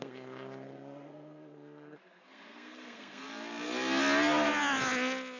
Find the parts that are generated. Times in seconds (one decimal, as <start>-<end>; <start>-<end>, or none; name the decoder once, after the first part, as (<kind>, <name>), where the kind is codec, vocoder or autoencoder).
0.0-3.2 (codec, SNAC)